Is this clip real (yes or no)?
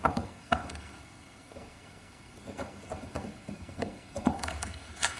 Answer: no